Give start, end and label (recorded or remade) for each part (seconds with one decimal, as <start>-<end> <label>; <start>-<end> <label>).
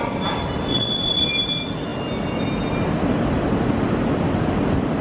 0.0-0.7 recorded; 0.7-1.3 remade; 1.3-5.0 recorded